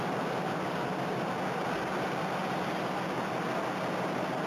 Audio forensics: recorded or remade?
recorded